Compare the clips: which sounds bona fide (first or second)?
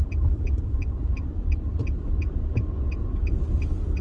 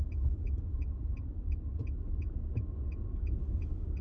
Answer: second